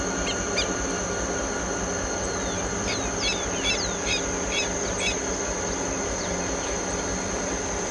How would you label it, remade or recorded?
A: recorded